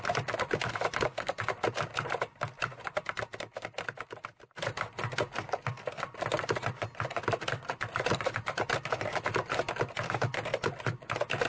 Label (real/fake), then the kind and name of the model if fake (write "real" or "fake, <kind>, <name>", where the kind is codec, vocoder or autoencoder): real